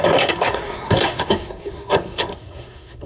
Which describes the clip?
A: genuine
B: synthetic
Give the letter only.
B